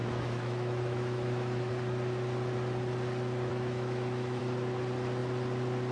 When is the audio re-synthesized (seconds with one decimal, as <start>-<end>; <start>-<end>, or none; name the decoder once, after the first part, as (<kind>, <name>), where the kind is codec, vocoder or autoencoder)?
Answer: 0.0-1.7 (autoencoder, DAC-VAE); 3.5-4.4

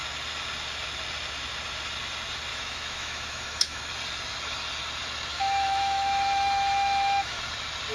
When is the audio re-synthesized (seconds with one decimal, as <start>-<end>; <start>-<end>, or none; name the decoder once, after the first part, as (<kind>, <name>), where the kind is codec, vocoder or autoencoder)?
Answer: 2.5-3.8 (autoencoder, DAC-VAE); 5.3-7.4

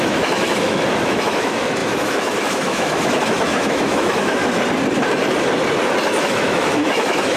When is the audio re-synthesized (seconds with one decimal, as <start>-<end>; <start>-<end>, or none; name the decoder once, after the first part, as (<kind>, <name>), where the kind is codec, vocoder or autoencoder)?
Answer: 0.0-4.4 (autoencoder, DAC-VAE); 6.2-7.4

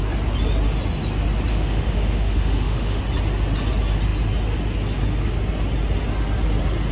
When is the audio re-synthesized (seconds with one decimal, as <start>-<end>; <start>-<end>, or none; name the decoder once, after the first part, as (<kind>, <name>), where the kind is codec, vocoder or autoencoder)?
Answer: 1.5-3.0 (autoencoder, DAC-VAE)

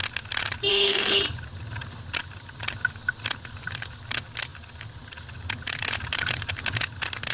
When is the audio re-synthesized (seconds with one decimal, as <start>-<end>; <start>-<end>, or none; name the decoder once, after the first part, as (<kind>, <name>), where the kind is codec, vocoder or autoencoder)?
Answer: 0.7-1.2 (autoencoder, DAC-VAE)

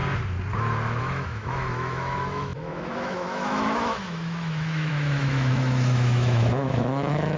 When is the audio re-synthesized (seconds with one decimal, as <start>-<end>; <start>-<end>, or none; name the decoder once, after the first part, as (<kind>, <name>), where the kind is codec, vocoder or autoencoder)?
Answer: 1.0-7.4 (autoencoder, DAC-VAE)